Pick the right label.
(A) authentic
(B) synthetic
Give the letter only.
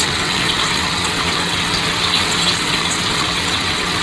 B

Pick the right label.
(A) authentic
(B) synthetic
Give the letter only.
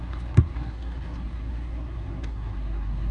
B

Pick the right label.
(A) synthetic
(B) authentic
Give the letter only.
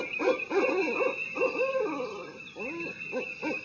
B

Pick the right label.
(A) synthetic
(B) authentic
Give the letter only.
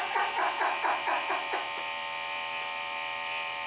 B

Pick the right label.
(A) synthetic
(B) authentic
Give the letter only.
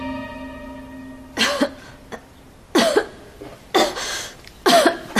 B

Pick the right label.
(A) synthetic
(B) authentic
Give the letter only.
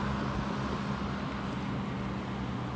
B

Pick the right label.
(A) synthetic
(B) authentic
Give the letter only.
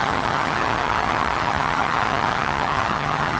A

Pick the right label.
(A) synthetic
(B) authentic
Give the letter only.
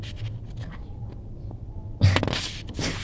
B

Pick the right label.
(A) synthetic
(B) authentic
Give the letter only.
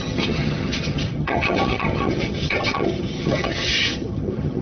A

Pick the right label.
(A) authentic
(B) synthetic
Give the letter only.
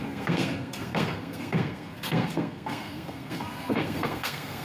B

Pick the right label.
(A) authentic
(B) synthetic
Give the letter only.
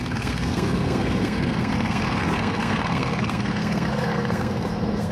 B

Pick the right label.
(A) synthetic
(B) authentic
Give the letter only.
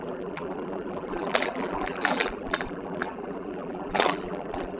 A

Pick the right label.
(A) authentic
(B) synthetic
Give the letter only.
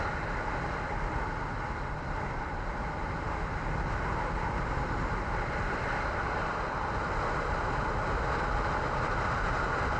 A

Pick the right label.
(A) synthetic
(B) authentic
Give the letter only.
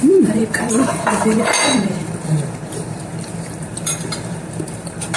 A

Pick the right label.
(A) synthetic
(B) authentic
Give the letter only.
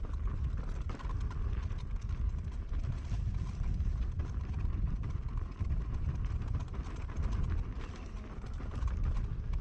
B